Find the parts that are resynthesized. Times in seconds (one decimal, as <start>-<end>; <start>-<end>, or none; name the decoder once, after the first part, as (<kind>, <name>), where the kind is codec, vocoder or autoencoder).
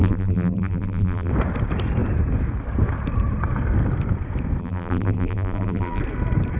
0.0-1.3 (vocoder, BigVGAN v2); 4.6-6.0